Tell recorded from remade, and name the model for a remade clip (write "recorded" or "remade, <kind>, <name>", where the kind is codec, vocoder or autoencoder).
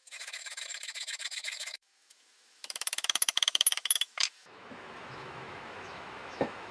remade, autoencoder, DAC-VAE